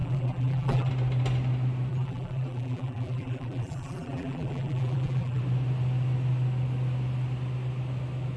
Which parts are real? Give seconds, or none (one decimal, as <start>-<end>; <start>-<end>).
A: 0.9-1.9; 5.4-8.4